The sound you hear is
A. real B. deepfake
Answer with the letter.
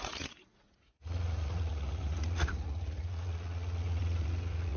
B